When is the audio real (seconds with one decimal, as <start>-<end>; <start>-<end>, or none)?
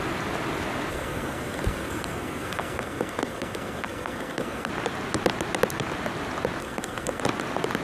0.0-0.9; 4.7-6.6; 7.2-7.8